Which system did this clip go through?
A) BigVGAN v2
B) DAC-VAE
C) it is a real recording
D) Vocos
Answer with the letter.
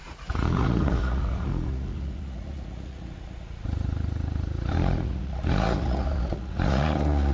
D